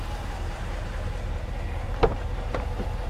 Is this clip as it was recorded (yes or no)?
no